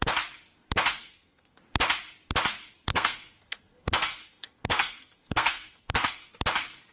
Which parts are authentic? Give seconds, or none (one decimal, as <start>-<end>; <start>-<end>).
0.0-0.9; 1.6-2.9; 6.3-6.9